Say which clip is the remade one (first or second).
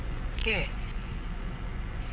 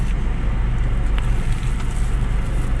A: first